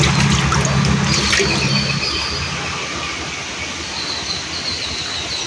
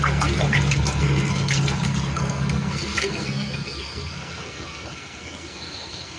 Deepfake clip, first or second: second